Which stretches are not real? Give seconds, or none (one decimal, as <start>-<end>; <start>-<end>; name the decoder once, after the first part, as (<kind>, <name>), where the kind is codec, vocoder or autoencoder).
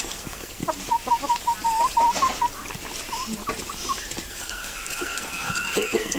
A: 0.0-0.6 (codec, SNAC); 4.3-6.2